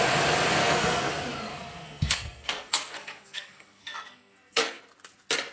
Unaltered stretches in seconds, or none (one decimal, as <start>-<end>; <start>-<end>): 0.0-0.6; 1.1-1.5; 4.8-5.5